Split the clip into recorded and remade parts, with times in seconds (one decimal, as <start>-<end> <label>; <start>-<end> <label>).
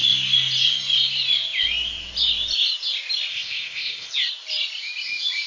0.0-3.3 recorded; 3.3-4.1 remade; 4.1-5.5 recorded